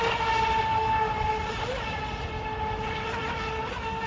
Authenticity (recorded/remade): recorded